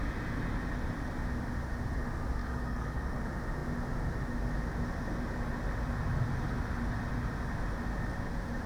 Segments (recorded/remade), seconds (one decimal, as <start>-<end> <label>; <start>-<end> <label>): 0.0-2.4 recorded; 2.4-3.2 remade; 3.2-8.7 recorded